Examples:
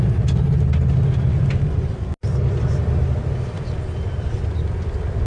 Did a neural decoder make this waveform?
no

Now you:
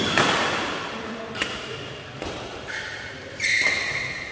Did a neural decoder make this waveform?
yes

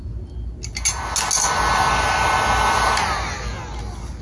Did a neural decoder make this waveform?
no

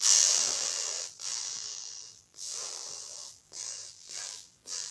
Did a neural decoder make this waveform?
yes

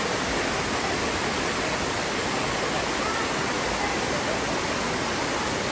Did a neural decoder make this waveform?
no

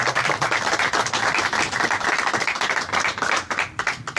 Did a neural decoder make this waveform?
no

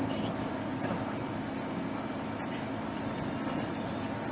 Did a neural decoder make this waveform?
no